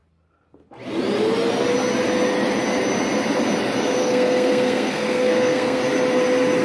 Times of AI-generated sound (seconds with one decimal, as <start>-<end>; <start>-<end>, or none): 4.0-5.8